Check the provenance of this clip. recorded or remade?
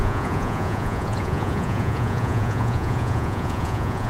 remade